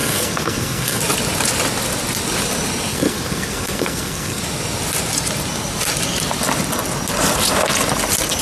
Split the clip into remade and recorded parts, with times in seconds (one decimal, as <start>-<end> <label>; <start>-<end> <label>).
0.0-1.0 remade; 1.0-2.9 recorded; 2.9-4.4 remade; 4.4-8.4 recorded